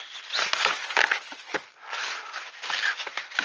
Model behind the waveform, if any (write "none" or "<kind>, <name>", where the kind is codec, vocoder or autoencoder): none